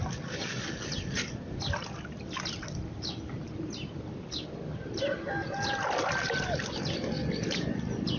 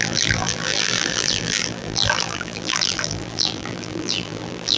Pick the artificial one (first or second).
second